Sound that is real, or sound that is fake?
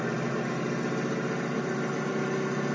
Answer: real